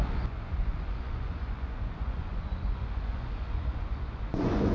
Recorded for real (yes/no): no